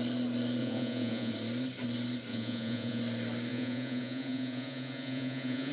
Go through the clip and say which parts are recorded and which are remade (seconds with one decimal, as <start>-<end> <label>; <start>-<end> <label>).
0.0-0.6 recorded; 0.6-1.3 remade; 1.3-2.3 recorded; 2.3-3.0 remade; 3.0-3.5 recorded; 3.5-5.7 remade